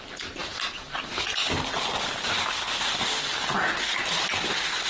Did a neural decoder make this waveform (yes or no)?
no